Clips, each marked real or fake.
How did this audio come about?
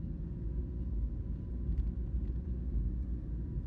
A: real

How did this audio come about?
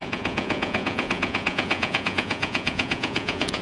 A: fake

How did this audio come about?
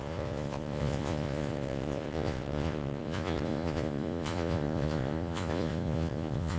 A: fake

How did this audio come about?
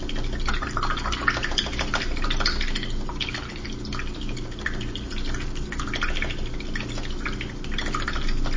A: real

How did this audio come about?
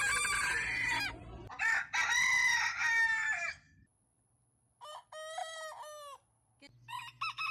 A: real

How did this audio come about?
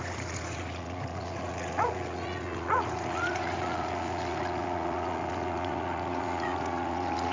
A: fake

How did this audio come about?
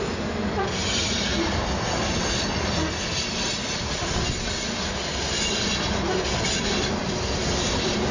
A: real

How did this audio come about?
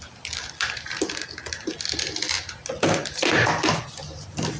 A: real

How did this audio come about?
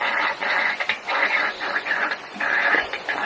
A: fake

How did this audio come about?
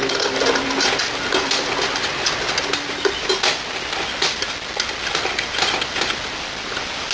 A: real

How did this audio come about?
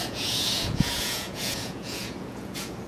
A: fake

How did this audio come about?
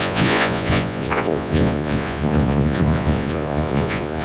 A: fake